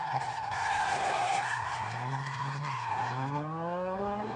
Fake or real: fake